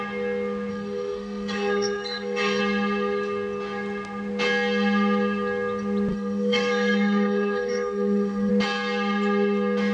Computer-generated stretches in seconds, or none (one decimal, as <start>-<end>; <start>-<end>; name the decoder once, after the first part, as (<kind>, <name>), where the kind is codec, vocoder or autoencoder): 0.7-2.6 (codec, SNAC); 6.1-8.5